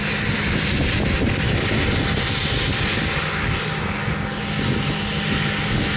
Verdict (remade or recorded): recorded